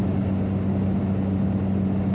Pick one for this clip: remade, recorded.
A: recorded